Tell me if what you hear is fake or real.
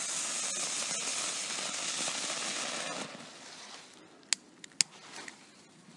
real